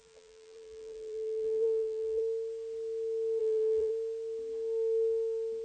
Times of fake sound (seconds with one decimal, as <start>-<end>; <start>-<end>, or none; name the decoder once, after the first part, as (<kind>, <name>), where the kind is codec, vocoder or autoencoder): 0.0-2.2 (vocoder, BigVGAN v2); 3.4-3.9